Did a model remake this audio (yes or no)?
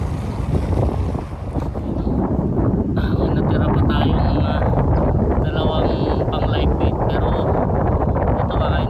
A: no